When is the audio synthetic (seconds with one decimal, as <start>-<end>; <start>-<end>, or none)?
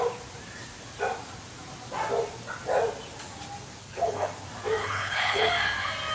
3.8-4.3; 4.8-5.5